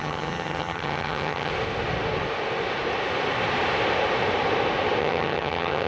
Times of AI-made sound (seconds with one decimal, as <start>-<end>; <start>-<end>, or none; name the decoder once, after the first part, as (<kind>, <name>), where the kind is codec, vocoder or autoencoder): 0.0-1.5 (vocoder, HiFi-GAN); 5.0-5.9